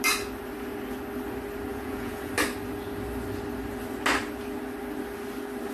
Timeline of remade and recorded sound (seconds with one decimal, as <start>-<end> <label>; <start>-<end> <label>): 0.0-1.7 recorded; 1.7-2.3 remade; 2.3-5.7 recorded